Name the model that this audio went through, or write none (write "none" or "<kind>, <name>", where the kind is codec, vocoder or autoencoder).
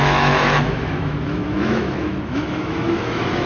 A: autoencoder, DAC-VAE